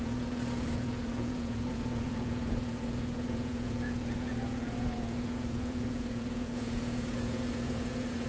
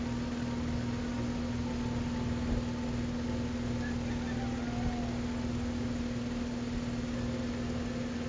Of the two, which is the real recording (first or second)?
second